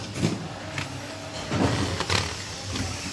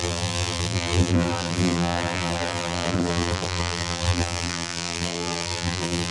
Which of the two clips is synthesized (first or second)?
second